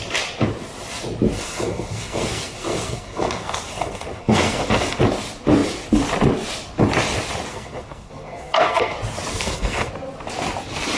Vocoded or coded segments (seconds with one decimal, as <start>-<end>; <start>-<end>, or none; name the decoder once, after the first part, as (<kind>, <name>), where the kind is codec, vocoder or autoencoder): 1.3-5.0 (codec, SNAC); 7.5-8.9; 9.3-9.9